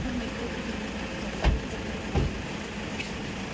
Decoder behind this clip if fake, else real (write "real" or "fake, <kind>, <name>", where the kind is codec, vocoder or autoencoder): real